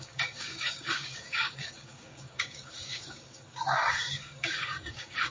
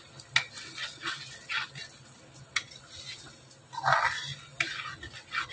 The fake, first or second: first